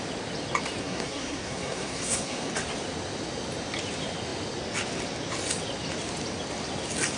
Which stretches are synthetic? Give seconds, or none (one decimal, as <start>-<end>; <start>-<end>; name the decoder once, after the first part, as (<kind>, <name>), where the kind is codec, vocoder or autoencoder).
0.8-2.5 (codec, SNAC)